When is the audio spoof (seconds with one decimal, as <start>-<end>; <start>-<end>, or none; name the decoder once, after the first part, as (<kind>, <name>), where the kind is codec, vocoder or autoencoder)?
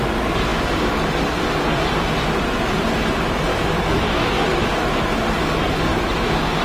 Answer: 3.5-5.2 (autoencoder, DAC-VAE); 5.9-6.6